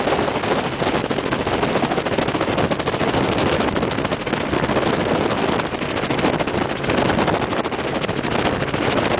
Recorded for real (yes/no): yes